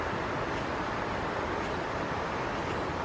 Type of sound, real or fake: real